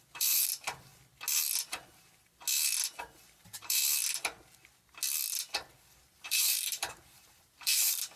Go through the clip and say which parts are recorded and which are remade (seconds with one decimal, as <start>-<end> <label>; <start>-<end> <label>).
0.0-0.9 remade; 0.9-3.0 recorded; 3.0-3.8 remade; 3.8-6.0 recorded; 6.0-8.2 remade